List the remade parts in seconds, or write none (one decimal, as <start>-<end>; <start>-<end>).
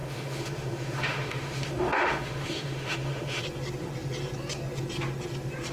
0.0-3.4